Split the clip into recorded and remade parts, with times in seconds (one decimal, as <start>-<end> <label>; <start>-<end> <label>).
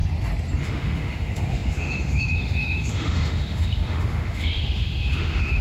0.0-0.6 recorded; 0.6-5.6 remade